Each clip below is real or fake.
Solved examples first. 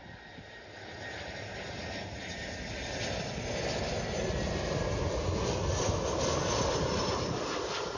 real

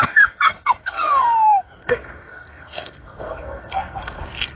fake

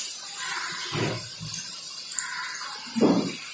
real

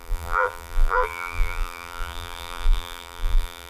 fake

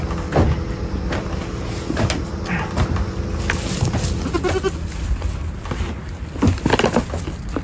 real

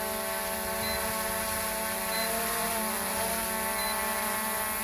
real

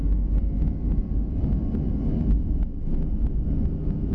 real